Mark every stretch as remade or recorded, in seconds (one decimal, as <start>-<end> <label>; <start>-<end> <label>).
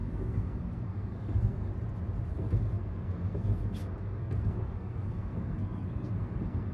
0.0-1.7 remade; 1.7-2.3 recorded; 2.3-6.7 remade